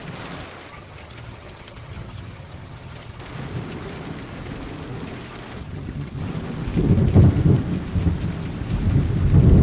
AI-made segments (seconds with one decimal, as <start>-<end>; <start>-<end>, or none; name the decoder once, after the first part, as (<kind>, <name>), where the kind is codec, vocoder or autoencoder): 0.7-3.2 (vocoder, HiFi-GAN); 5.6-6.2